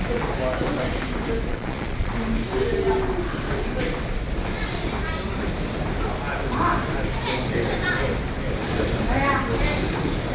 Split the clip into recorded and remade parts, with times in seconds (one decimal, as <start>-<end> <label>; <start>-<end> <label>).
0.0-1.5 recorded; 1.5-2.1 remade; 2.1-10.3 recorded

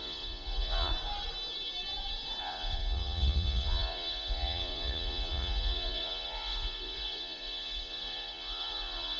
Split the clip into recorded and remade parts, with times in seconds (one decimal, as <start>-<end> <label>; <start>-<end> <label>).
0.0-0.9 remade; 0.9-2.4 recorded; 2.4-9.2 remade

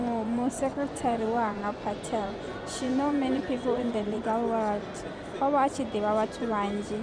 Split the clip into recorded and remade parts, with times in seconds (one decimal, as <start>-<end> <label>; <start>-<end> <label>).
0.0-4.2 remade; 4.2-7.0 recorded

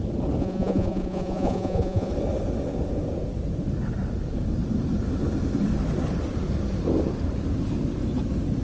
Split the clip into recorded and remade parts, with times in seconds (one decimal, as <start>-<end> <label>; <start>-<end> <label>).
0.0-0.4 recorded; 0.4-2.1 remade; 2.1-8.6 recorded

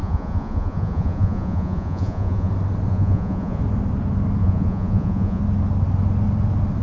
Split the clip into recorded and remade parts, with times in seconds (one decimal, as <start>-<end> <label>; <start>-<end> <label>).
0.0-2.5 remade; 2.5-2.9 recorded; 2.9-3.6 remade; 3.6-4.4 recorded; 4.4-5.4 remade; 5.4-6.8 recorded